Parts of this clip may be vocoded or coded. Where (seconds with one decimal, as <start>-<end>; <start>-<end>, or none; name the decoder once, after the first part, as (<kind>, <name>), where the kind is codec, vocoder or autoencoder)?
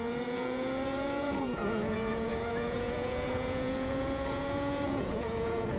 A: 0.0-5.8 (vocoder, Vocos)